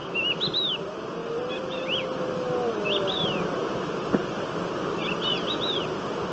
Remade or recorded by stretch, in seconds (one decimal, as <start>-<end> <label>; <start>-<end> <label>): 0.0-6.3 recorded